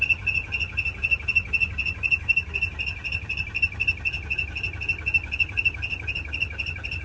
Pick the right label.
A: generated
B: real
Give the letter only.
B